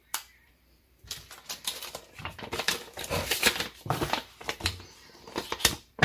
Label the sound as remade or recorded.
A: remade